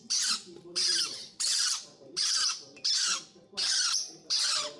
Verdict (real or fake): fake